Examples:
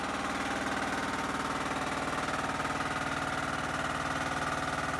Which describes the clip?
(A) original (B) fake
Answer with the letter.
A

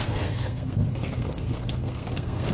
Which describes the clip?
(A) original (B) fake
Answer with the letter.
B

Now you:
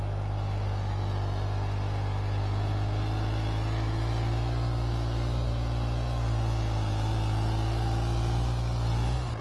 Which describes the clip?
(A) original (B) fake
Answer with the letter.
A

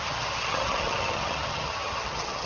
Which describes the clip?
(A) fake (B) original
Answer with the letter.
A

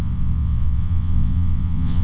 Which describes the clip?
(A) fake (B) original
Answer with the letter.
A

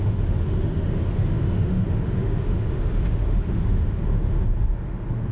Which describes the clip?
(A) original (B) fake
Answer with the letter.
B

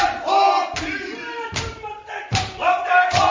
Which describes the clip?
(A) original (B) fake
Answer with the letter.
B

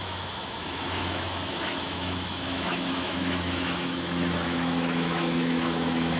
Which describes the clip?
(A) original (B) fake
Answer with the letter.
B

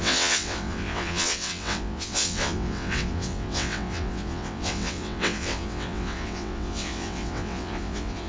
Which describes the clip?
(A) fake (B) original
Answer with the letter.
A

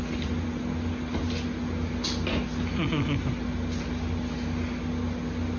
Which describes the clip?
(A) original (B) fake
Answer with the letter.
A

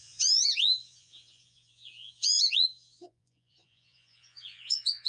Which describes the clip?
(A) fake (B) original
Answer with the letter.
A